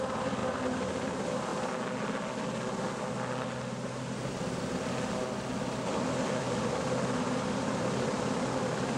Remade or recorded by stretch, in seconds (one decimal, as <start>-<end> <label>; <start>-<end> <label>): 0.0-0.4 remade; 0.4-0.9 recorded; 0.9-1.5 remade; 1.5-6.3 recorded; 6.3-9.0 remade